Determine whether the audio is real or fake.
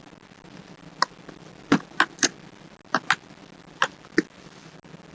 real